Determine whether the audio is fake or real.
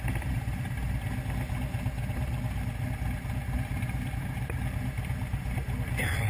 real